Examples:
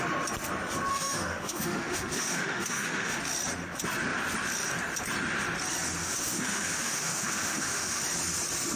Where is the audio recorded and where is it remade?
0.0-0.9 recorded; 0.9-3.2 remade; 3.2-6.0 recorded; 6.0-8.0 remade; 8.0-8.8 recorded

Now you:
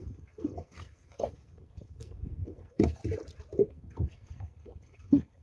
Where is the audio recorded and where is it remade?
0.0-3.0 remade; 3.0-3.7 recorded; 3.7-5.4 remade